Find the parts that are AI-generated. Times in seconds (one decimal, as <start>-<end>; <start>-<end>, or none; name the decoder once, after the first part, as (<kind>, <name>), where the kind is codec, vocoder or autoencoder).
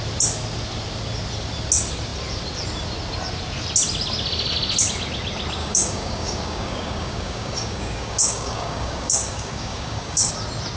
5.6-10.3 (codec, DAC)